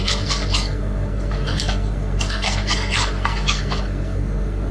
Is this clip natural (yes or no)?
no